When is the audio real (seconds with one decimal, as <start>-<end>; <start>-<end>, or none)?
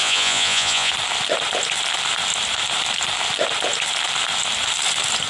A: 0.9-5.3